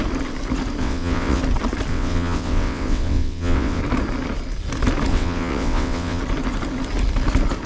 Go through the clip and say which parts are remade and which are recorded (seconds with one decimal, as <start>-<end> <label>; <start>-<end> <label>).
0.0-0.8 recorded; 0.8-1.4 remade; 1.4-1.9 recorded; 1.9-3.8 remade; 3.8-5.1 recorded; 5.1-6.2 remade; 6.2-7.7 recorded